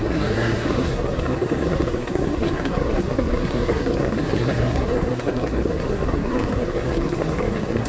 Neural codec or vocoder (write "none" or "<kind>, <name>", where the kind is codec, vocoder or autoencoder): codec, SNAC